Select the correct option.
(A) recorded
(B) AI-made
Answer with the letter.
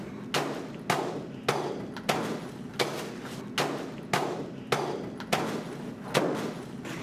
A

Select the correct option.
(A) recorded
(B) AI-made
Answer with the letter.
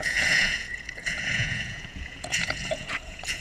B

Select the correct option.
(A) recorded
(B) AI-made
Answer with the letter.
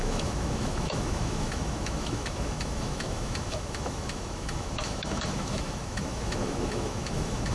B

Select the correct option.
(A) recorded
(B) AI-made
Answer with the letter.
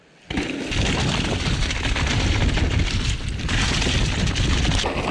A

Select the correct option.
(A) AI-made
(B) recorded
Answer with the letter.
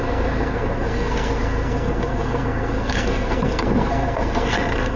A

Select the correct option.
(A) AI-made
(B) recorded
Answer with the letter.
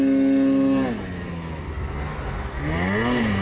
B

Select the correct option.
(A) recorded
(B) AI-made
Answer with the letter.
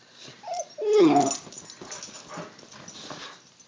A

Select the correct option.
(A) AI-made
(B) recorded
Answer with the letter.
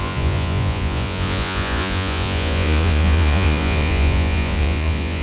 A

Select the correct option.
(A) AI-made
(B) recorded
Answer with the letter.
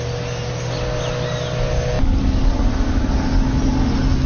B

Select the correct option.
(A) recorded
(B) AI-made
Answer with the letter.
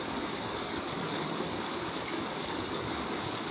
B